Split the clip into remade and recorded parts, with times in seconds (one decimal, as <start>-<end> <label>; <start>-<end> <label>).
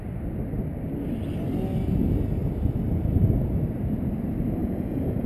0.0-4.6 recorded; 4.6-5.3 remade